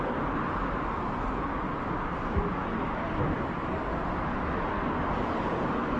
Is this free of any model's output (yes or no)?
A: yes